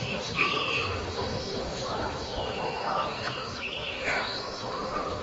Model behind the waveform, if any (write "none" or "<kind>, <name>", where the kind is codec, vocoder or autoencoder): autoencoder, DAC-VAE